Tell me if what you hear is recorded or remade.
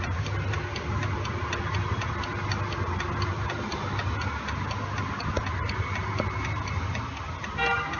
recorded